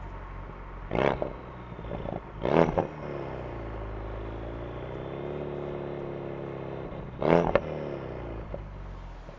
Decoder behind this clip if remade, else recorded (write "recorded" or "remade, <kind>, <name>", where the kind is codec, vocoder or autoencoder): recorded